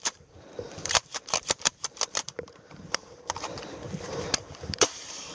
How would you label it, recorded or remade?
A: remade